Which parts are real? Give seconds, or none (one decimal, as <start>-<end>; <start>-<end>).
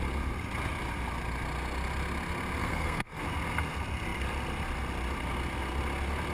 0.0-2.6; 3.2-6.3